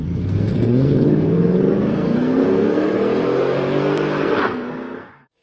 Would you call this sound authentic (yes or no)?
no